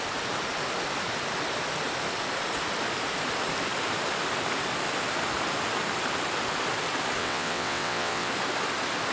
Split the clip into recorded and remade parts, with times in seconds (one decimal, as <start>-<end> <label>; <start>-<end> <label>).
0.0-7.2 recorded; 7.2-8.3 remade; 8.3-9.1 recorded